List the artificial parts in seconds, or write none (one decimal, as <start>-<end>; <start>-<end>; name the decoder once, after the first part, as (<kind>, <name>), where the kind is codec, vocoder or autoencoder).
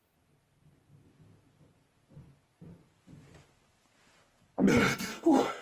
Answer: 4.9-5.6 (codec, SNAC)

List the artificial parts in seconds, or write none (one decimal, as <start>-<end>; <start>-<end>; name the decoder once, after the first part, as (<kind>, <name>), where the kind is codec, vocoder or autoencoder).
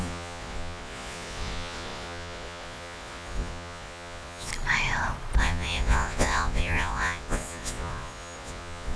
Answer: 0.0-4.5 (vocoder, Vocos); 5.4-9.0